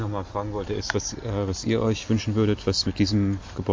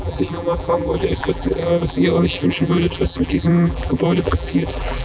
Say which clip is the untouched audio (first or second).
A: first